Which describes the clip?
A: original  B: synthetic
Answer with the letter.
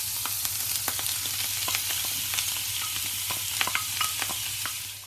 A